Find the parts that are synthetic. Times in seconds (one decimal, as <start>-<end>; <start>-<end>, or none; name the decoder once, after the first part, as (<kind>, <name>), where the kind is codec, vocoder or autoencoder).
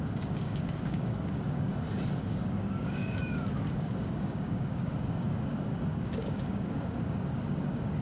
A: 0.0-1.7 (codec, DAC); 2.2-8.0